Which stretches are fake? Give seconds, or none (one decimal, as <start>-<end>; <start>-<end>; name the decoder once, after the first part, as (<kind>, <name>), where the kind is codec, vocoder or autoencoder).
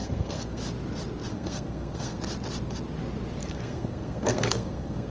0.0-0.6 (codec, SNAC); 1.3-2.2; 3.4-5.1